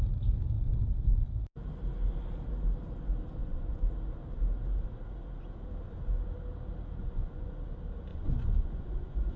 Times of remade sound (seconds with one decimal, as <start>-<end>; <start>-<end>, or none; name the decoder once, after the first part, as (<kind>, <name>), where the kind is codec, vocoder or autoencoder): 3.4-3.9 (vocoder, Vocos); 7.0-7.6; 8.1-9.4